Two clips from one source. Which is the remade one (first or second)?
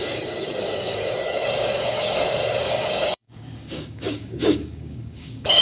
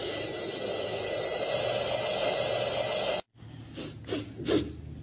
first